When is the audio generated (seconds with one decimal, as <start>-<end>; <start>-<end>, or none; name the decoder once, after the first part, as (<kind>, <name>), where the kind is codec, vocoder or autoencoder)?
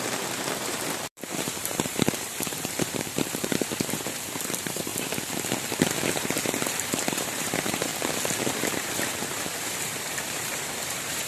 0.0-4.9 (vocoder, BigVGAN v2); 6.1-7.9; 8.5-11.3